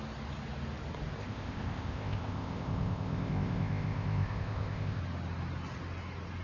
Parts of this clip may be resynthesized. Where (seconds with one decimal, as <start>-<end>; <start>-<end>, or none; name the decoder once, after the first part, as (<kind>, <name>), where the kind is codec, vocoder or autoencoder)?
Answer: 1.2-5.0 (codec, ZipCodec)